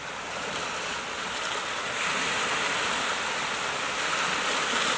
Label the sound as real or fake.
real